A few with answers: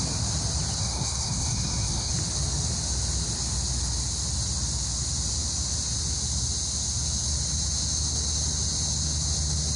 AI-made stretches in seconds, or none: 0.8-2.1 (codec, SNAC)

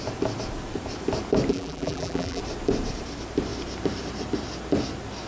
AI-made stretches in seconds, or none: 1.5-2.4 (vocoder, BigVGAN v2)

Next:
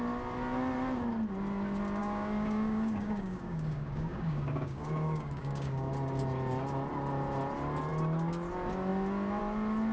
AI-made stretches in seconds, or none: 2.0-5.9 (codec, DAC)